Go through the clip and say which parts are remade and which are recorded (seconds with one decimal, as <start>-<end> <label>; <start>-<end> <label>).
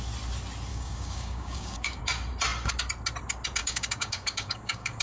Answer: 0.0-0.7 recorded; 0.7-2.0 remade; 2.0-3.6 recorded; 3.6-5.0 remade